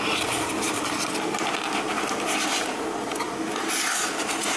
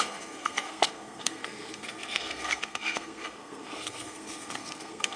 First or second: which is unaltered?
first